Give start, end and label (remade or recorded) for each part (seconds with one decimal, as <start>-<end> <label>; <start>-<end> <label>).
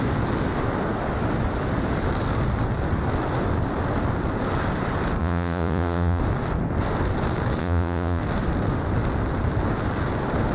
0.0-5.2 recorded; 5.2-6.2 remade; 6.2-7.6 recorded; 7.6-8.2 remade; 8.2-10.5 recorded